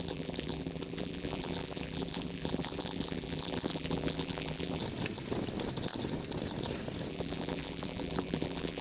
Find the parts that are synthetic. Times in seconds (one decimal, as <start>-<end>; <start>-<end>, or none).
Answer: 0.0-4.8; 7.1-8.8